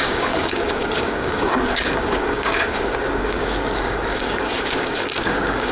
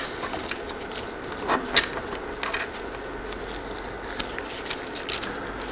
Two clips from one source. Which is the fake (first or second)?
first